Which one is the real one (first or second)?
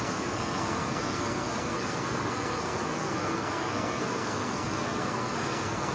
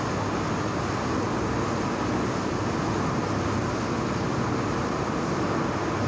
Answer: second